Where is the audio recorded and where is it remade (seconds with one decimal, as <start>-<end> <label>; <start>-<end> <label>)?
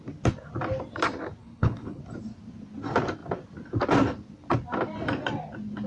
0.0-1.4 recorded; 1.4-2.0 remade; 2.0-5.9 recorded